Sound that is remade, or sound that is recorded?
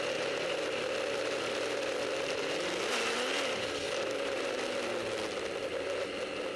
recorded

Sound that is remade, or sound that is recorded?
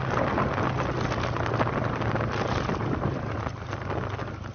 recorded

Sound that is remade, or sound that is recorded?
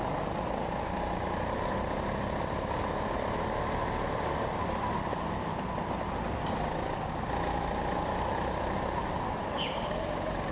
recorded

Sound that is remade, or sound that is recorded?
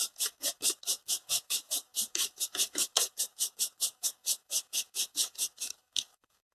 remade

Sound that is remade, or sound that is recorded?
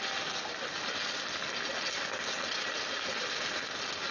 recorded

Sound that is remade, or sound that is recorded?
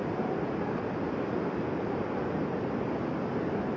recorded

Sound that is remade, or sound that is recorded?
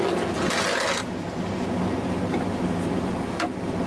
recorded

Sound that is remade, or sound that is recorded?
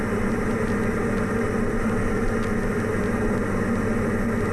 recorded